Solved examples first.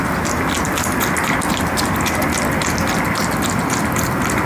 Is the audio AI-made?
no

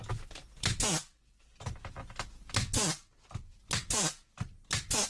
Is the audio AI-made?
no